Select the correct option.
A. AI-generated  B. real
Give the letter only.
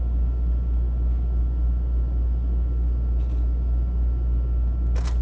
B